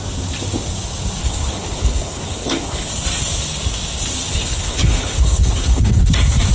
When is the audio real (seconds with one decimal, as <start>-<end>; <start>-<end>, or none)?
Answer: 0.0-1.2; 2.9-4.3; 6.1-6.5